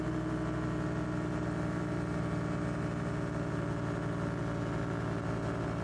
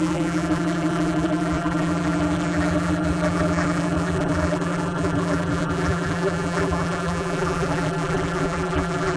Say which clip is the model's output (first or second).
second